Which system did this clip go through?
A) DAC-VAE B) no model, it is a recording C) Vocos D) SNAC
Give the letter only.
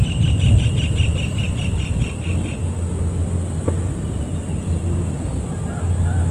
B